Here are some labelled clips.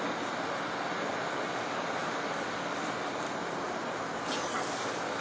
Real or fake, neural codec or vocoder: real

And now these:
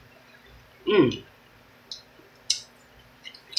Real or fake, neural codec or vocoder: real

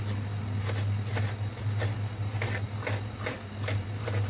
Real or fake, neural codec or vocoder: real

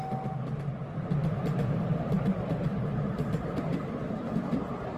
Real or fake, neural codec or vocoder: real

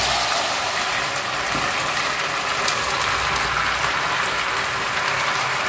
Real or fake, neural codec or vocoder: real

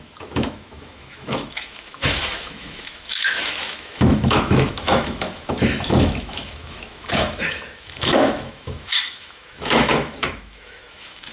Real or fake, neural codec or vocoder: fake, autoencoder, DAC-VAE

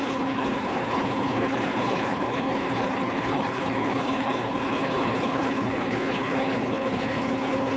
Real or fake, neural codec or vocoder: fake, codec, HILCodec